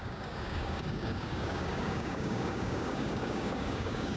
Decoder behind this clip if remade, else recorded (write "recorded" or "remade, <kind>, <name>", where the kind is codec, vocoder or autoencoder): remade, codec, DAC